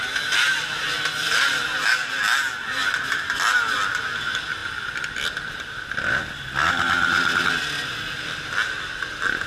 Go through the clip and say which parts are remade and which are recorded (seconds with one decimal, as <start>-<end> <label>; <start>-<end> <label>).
0.0-1.2 recorded; 1.2-1.8 remade; 1.8-9.5 recorded